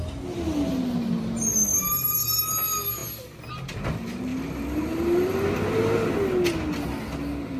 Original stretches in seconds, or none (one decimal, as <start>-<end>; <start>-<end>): 0.0-4.3; 5.4-7.6